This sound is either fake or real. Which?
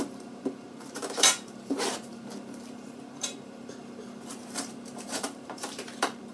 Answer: fake